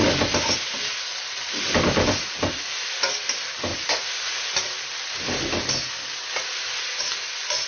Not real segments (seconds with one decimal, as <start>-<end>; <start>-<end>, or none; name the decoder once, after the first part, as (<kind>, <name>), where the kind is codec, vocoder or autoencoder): none